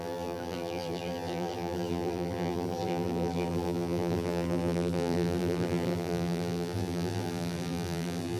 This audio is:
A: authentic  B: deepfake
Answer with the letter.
B